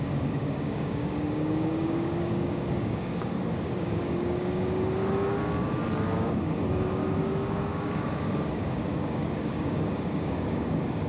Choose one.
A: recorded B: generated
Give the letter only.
B